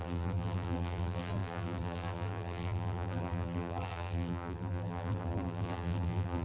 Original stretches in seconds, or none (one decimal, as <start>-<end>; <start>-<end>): none